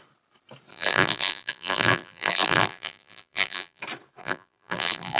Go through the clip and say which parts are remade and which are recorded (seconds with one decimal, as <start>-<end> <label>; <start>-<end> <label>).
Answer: 0.0-0.7 recorded; 0.7-3.8 remade; 3.8-4.2 recorded; 4.2-5.2 remade